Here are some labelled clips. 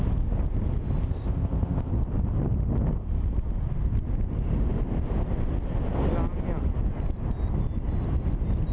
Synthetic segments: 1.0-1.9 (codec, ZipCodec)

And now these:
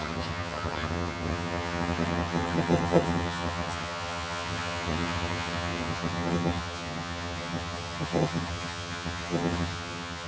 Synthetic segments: 0.0-10.3 (vocoder, HiFi-GAN)

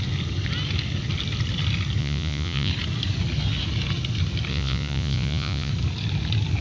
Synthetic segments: 2.0-2.7 (vocoder, Vocos); 4.5-5.7

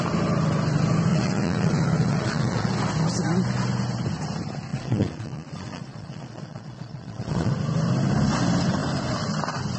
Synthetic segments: 1.1-2.7 (vocoder, Vocos); 4.7-7.5

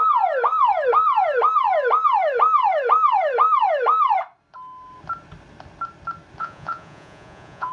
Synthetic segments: 6.4-7.7 (vocoder, Vocos)

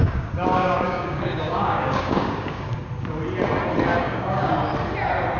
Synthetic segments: 0.0-2.8 (codec, DAC); 4.0-4.5